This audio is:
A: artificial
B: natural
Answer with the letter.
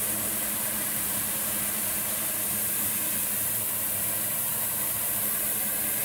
A